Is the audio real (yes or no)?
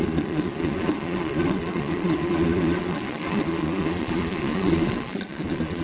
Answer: no